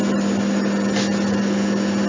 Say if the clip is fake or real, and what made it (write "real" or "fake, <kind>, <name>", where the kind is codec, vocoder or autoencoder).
real